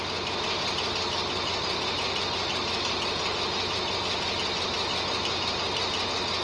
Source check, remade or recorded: recorded